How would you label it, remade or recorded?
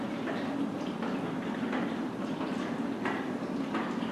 recorded